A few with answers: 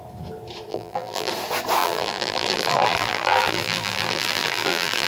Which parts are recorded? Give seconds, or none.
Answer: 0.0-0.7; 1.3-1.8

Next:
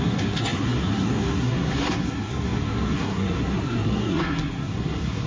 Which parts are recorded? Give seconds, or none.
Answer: none

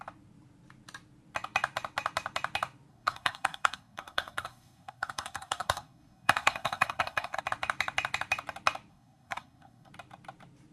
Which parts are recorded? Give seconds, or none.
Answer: 0.0-2.9; 7.4-8.9; 9.9-10.7

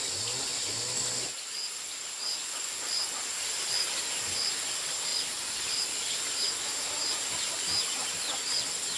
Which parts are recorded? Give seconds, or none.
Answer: 0.0-2.4; 3.0-9.0

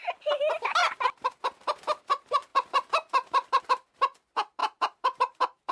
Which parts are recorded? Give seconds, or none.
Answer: 0.0-0.8; 1.3-2.5; 3.6-4.6